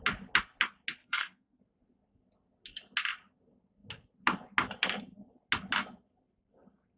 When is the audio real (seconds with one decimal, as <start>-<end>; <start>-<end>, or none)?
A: 0.0-1.0; 1.6-7.0